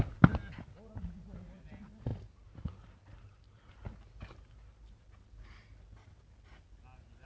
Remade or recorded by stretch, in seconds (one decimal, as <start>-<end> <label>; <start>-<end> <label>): 0.0-7.2 recorded

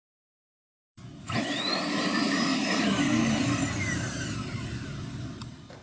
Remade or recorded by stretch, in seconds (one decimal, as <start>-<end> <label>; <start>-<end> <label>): 0.0-5.8 remade